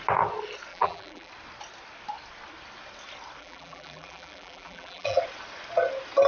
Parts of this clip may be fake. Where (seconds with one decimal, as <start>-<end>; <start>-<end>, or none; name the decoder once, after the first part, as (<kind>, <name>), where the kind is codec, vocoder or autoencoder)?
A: 0.7-1.3 (vocoder, BigVGAN v2); 3.4-5.2